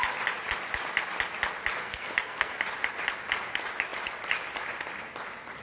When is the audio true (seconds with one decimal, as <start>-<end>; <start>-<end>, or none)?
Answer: 0.0-1.8; 2.6-5.6